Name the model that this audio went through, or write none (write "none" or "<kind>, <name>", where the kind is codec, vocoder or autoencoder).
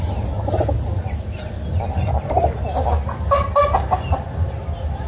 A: vocoder, BigVGAN v2